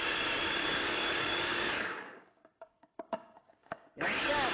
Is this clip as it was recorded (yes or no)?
no